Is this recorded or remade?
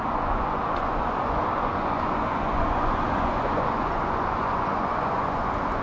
remade